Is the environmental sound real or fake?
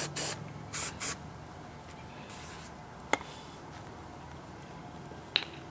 real